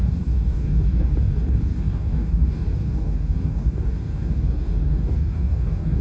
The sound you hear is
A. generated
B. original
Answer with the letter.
A